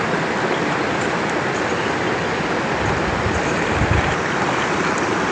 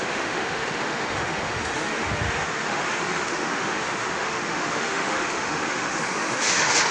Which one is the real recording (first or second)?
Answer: first